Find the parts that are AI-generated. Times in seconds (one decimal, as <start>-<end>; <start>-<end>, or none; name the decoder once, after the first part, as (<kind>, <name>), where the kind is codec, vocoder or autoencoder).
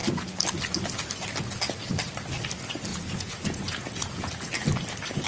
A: 2.9-4.3 (vocoder, Vocos)